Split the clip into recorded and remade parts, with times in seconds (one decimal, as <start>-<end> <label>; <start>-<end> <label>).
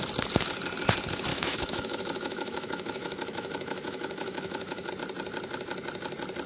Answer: 0.0-1.3 recorded; 1.3-4.9 remade; 4.9-6.5 recorded